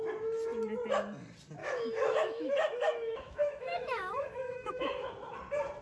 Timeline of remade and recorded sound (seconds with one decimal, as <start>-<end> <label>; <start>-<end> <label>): 0.0-1.6 recorded; 1.6-5.1 remade; 5.1-5.8 recorded